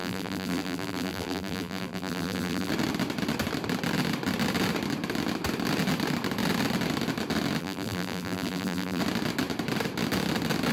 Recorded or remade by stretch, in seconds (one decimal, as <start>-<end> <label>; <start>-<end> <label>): 0.0-2.7 remade; 2.7-7.6 recorded; 7.6-9.0 remade; 9.0-10.7 recorded